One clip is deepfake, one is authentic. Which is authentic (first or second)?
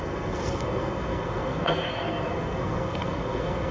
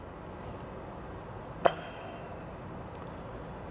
second